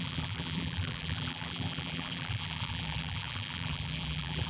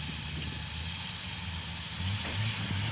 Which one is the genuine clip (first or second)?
second